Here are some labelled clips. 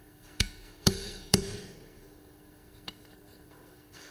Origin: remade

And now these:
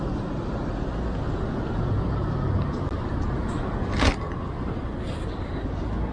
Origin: recorded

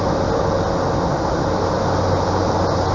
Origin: recorded